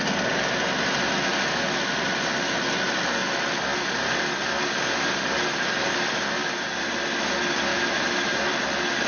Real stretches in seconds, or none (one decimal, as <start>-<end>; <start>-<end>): 0.0-7.7; 8.5-9.1